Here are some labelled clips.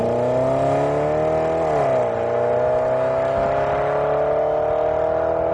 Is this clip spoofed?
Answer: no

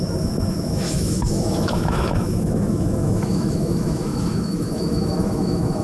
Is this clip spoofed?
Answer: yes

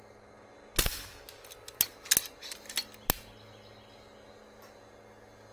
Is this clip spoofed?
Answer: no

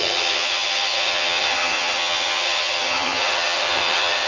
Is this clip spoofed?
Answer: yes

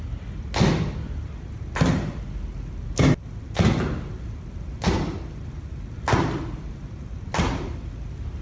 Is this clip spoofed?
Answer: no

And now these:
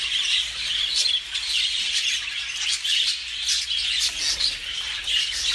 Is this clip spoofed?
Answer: no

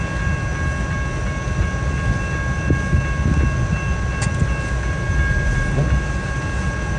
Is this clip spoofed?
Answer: no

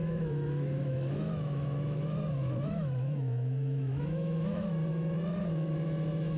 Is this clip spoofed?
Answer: yes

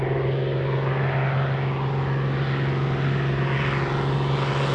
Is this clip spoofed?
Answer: no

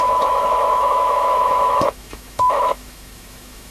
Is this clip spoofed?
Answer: yes